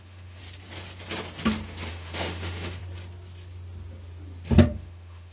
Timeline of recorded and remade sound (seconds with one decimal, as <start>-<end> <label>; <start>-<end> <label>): 0.0-0.4 remade; 0.4-1.9 recorded; 1.9-2.8 remade; 2.8-4.7 recorded; 4.7-5.3 remade